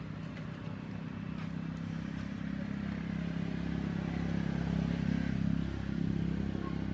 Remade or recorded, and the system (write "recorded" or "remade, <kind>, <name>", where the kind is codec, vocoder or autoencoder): recorded